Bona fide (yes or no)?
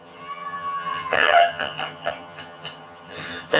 no